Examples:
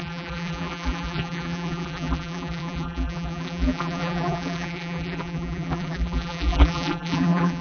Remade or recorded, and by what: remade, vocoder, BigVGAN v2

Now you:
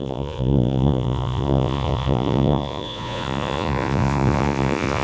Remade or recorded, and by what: remade, vocoder, Vocos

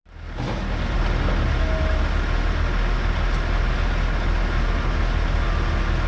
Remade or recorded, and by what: recorded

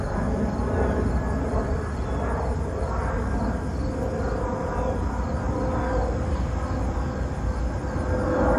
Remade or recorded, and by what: recorded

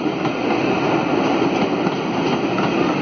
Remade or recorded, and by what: recorded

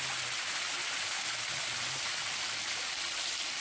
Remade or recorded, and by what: recorded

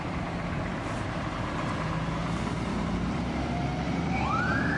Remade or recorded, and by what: remade, vocoder, BigVGAN v2